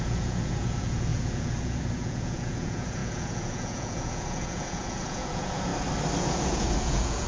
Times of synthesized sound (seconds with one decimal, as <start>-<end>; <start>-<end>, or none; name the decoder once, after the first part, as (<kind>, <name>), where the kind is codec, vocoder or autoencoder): 0.0-5.7 (vocoder, Vocos); 6.2-7.3